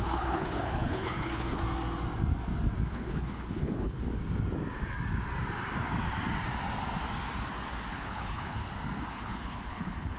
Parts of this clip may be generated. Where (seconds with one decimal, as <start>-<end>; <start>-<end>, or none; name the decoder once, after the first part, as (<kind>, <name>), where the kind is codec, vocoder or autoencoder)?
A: 0.0-1.6 (codec, HILCodec); 2.9-4.0; 7.9-8.6; 9.1-10.2